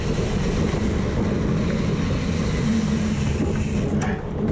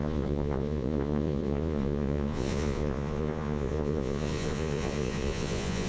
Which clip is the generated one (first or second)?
second